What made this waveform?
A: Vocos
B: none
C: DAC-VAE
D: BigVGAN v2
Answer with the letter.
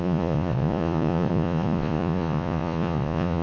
A